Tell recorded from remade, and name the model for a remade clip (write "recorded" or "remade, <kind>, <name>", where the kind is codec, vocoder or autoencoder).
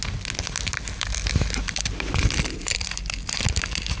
recorded